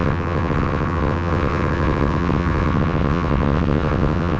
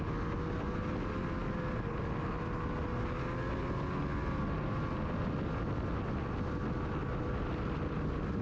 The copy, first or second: first